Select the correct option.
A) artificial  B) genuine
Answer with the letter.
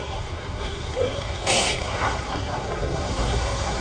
A